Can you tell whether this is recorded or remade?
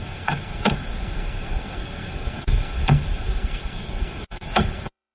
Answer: remade